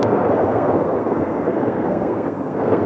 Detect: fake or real fake